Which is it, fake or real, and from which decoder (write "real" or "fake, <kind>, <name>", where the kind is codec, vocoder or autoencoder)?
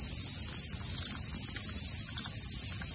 real